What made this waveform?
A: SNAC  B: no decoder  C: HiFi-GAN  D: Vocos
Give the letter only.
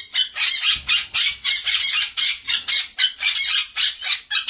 B